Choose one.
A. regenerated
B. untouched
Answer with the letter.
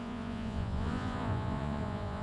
A